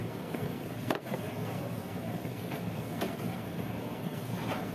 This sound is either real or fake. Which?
fake